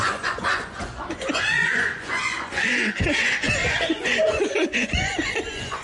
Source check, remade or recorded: remade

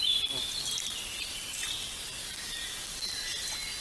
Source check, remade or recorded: recorded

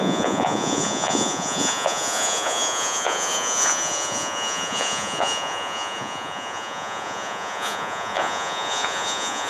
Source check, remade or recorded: remade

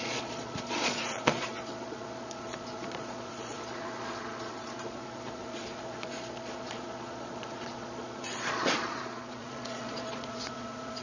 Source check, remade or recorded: remade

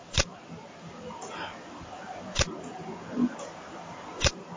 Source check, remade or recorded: recorded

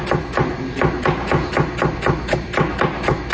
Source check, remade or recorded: recorded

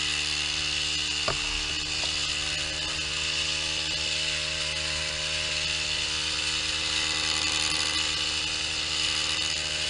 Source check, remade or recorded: recorded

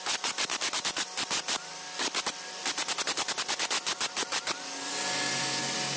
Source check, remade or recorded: recorded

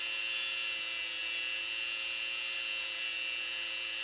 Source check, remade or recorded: remade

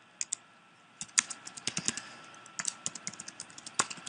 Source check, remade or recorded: recorded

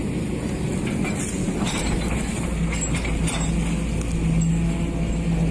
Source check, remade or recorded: recorded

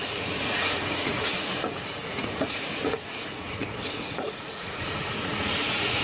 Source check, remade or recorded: remade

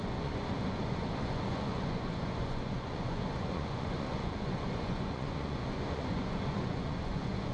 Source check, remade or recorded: remade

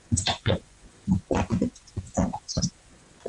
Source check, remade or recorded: remade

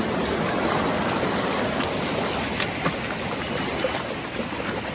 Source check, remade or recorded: recorded